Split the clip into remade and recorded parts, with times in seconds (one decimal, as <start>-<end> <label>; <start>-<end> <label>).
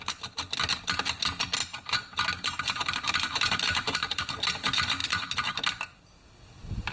0.0-1.6 recorded; 1.6-4.3 remade; 4.3-6.9 recorded